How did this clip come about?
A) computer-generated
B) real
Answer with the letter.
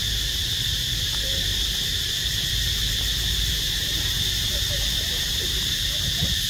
A